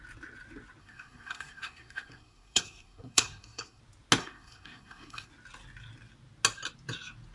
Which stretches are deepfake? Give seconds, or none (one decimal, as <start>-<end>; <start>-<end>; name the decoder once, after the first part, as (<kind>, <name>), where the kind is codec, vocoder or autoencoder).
0.8-3.8 (codec, SNAC); 4.2-5.3